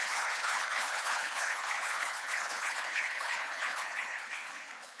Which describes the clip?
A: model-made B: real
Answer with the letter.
A